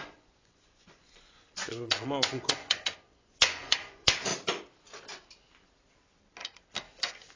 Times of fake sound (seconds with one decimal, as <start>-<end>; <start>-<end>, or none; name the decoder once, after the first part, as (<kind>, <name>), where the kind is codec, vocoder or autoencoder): 0.0-4.3 (vocoder, Vocos)